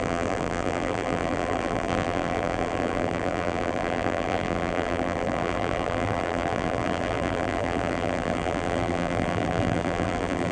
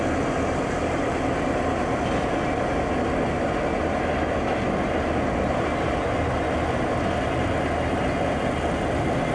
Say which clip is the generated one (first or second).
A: first